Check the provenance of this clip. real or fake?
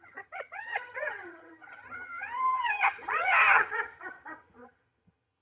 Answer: fake